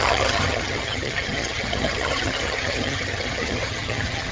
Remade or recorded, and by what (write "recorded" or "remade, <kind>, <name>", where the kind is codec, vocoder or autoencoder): remade, vocoder, HiFi-GAN